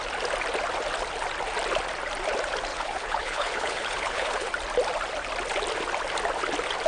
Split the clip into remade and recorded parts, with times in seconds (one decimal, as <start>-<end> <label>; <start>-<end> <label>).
0.0-2.7 recorded; 2.7-4.5 remade; 4.5-6.9 recorded